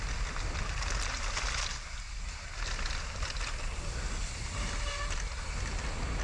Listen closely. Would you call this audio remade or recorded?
recorded